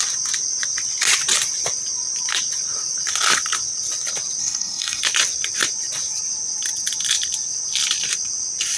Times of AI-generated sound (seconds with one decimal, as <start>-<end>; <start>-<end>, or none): 4.4-5.0